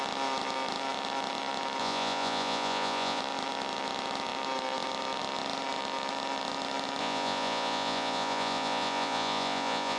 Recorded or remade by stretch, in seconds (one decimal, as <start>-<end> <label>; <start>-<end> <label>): 0.0-1.8 recorded; 1.8-3.2 remade; 3.2-7.0 recorded; 7.0-10.0 remade